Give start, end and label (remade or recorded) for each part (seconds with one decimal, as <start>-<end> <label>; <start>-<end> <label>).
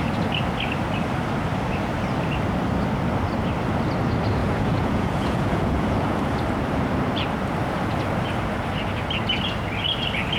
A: 0.0-4.4 recorded; 4.4-6.3 remade; 6.3-10.4 recorded